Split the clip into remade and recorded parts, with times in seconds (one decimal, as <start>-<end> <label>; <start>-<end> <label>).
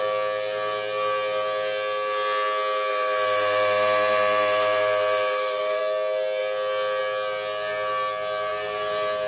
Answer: 0.0-2.9 recorded; 2.9-5.8 remade; 5.8-9.3 recorded